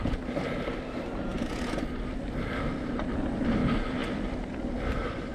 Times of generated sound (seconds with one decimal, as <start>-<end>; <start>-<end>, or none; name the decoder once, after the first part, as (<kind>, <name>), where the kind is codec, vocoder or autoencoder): none